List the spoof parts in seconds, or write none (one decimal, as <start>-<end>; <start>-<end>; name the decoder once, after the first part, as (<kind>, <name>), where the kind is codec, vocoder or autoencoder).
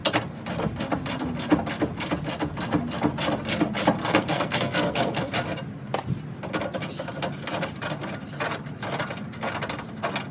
4.0-5.3 (codec, SNAC)